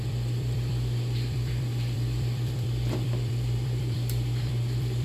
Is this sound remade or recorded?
remade